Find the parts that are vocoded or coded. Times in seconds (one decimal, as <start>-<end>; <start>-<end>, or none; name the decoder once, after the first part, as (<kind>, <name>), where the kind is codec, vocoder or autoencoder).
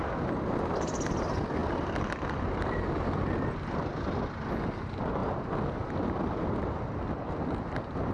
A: none